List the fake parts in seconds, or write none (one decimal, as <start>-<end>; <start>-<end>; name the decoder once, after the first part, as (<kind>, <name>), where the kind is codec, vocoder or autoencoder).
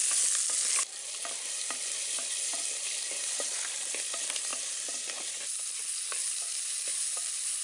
none